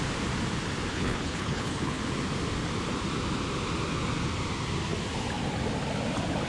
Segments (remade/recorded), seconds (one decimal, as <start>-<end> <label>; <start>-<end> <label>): 0.0-0.9 recorded; 0.9-2.0 remade; 2.0-6.5 recorded